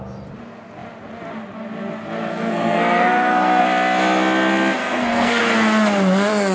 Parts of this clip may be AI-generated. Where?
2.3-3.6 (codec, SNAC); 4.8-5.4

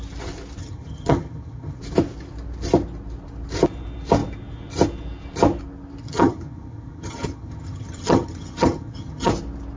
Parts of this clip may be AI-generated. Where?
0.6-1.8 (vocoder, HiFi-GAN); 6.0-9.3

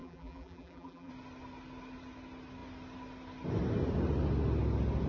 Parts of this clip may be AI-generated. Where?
0.0-1.1 (vocoder, BigVGAN v2)

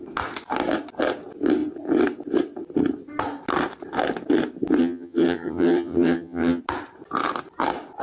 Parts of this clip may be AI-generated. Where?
4.8-6.6 (vocoder, HiFi-GAN)

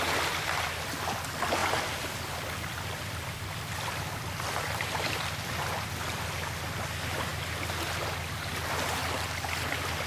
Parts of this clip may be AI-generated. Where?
1.6-5.5 (vocoder, BigVGAN v2)